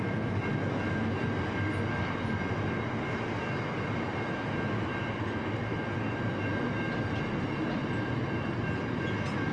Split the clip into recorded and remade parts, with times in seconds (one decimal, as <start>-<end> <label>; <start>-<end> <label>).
0.0-9.5 recorded